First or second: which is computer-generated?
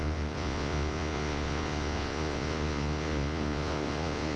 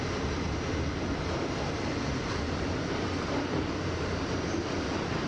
first